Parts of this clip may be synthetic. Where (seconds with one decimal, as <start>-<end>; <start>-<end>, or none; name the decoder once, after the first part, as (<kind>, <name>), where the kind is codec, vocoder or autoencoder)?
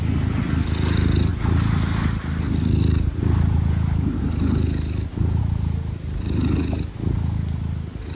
none